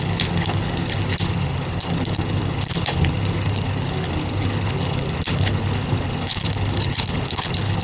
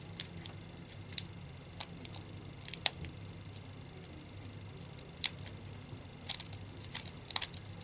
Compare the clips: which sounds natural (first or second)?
second